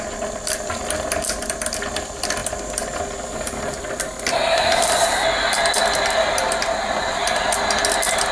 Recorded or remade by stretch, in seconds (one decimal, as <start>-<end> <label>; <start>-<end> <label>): 0.0-8.3 recorded